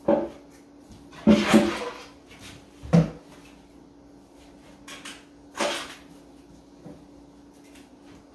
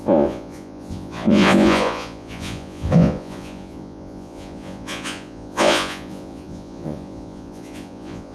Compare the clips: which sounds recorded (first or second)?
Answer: first